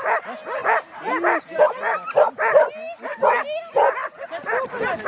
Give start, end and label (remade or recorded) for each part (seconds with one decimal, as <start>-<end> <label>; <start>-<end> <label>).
0.0-5.1 recorded